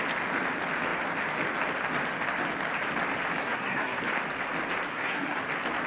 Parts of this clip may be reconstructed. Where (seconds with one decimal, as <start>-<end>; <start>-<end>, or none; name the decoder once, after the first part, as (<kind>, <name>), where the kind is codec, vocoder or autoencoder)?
3.4-4.0 (codec, SNAC); 4.9-5.4